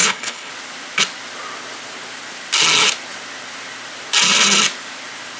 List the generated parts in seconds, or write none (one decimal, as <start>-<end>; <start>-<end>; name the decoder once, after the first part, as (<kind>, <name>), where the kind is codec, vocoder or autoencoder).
0.0-0.5 (codec, HILCodec)